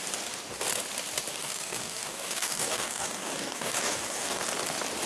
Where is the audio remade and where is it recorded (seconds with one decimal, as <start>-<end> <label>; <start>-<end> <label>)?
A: 0.0-1.3 recorded; 1.3-4.4 remade; 4.4-5.1 recorded